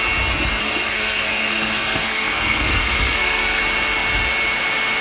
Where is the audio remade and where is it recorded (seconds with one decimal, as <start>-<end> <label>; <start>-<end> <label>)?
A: 0.0-0.6 recorded; 0.6-3.6 remade; 3.6-5.0 recorded